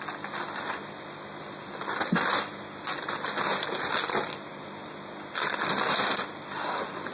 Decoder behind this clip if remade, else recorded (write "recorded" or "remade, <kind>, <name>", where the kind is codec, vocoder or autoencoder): recorded